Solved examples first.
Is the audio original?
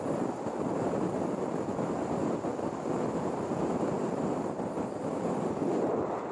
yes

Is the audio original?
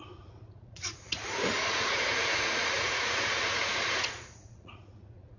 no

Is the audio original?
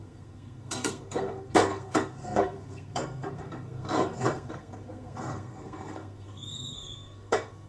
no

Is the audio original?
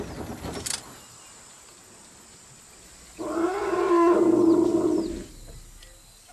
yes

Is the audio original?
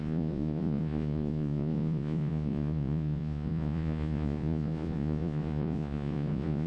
no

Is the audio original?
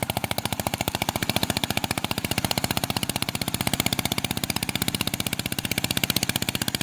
no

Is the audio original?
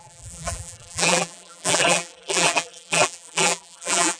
no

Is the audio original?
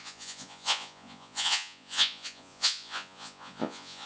no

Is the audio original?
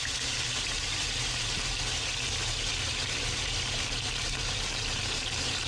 no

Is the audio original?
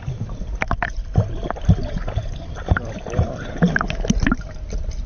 yes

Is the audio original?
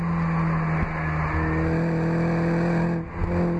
yes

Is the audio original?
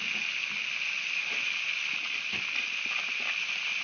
yes